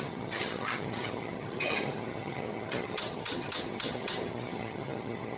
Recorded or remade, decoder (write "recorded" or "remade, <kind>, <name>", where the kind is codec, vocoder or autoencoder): remade, vocoder, HiFi-GAN